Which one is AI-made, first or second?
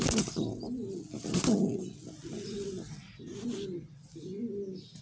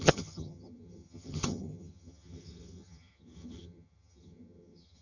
second